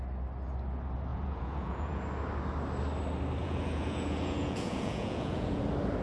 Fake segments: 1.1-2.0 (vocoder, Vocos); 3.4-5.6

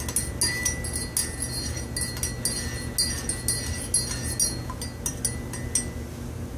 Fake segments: none